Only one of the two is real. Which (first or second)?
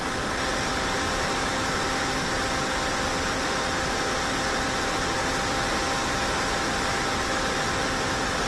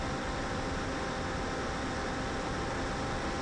first